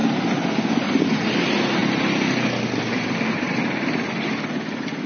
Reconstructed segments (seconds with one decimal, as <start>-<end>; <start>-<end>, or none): none